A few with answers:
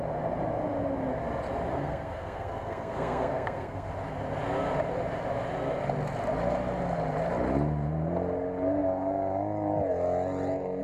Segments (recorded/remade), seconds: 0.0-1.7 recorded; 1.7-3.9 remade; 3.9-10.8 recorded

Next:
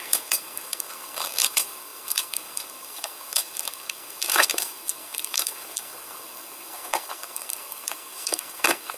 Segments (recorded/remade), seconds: 0.0-9.0 remade